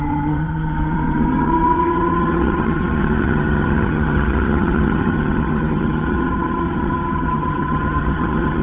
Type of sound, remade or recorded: remade